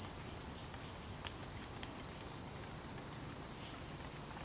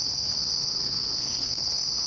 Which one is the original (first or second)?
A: first